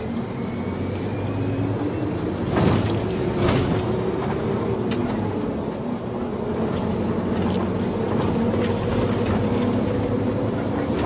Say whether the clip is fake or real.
real